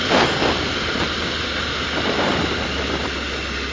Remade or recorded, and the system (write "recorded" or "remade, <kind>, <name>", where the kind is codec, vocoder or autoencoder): recorded